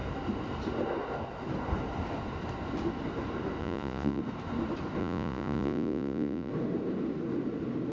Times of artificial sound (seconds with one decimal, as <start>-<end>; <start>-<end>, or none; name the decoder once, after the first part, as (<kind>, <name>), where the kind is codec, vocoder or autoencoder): 3.6-4.2 (vocoder, Vocos); 5.0-6.5